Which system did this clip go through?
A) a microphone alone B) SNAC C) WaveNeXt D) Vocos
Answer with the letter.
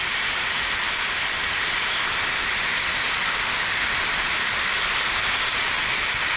A